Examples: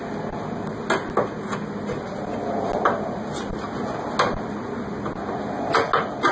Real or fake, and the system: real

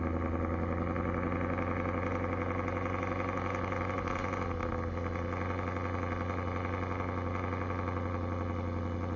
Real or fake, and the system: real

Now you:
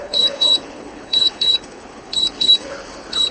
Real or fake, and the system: fake, codec, HILCodec